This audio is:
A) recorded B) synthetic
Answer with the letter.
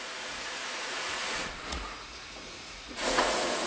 B